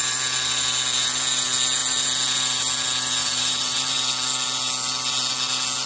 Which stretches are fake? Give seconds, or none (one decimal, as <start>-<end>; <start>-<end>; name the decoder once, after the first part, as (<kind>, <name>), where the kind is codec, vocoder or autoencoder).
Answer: 3.2-4.0 (vocoder, BigVGAN v2)